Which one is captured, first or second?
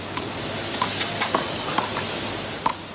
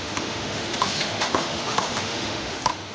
first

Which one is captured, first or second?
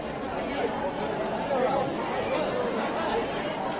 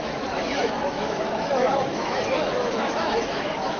first